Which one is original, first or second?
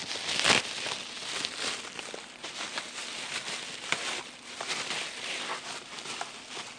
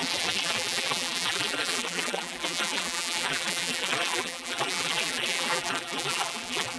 first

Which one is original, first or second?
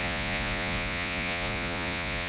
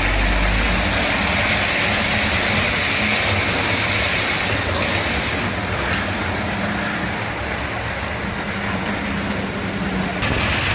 second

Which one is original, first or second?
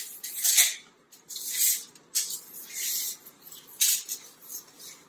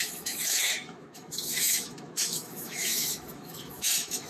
first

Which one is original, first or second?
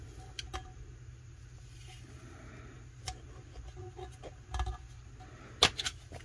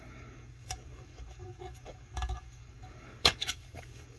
first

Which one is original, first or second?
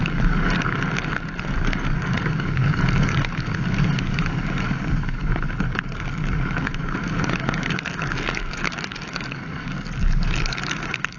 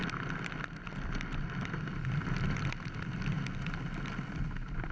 second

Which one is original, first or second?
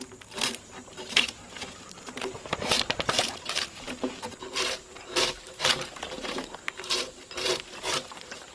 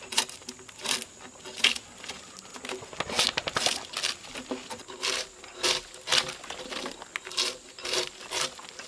second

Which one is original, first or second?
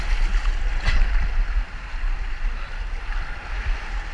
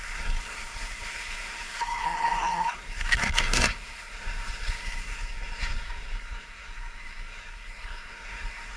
first